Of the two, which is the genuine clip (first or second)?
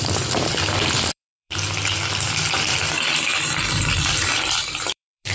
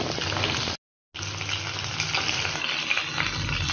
second